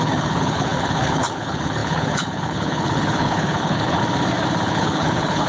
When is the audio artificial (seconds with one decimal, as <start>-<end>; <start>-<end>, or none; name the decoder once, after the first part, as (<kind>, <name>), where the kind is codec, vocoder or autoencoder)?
0.0-4.0 (codec, HILCodec); 4.7-5.5